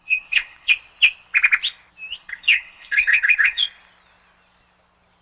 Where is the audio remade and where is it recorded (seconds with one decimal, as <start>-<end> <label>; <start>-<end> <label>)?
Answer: 0.0-0.7 remade; 0.7-2.2 recorded; 2.2-3.6 remade; 3.6-5.2 recorded